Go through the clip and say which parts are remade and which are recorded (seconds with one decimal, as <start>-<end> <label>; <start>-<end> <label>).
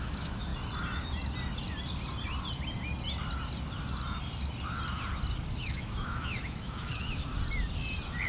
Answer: 0.0-0.5 remade; 0.5-5.5 recorded; 5.5-7.3 remade; 7.3-8.3 recorded